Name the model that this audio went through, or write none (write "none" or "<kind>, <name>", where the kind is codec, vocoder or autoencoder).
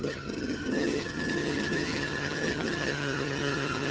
vocoder, HiFi-GAN